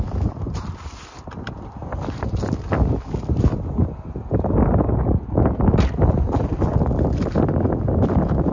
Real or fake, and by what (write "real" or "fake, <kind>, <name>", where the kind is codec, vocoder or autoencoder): real